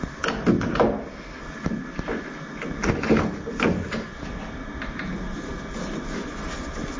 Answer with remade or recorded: recorded